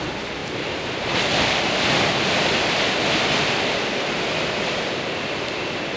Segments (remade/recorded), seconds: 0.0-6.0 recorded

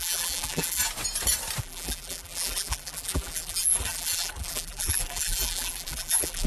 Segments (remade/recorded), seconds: 0.0-0.8 remade; 0.8-1.6 recorded; 1.6-6.5 remade

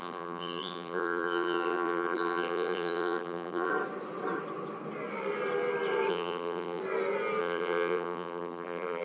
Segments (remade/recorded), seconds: 0.0-3.7 remade; 3.7-6.1 recorded; 6.1-6.8 remade; 6.8-7.4 recorded; 7.4-9.0 remade

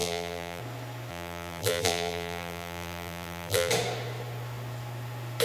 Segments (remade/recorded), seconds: 0.0-0.6 remade; 0.6-1.1 recorded; 1.1-3.7 remade; 3.7-5.4 recorded

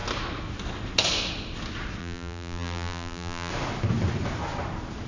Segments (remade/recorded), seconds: 0.0-2.0 recorded; 2.0-3.5 remade; 3.5-5.1 recorded

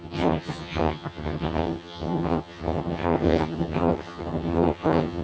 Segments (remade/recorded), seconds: 0.0-5.2 remade

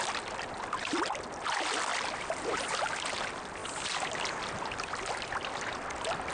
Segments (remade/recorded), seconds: 0.0-6.3 recorded